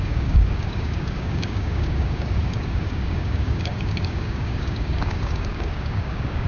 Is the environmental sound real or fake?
fake